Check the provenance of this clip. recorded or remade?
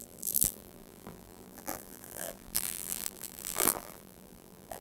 remade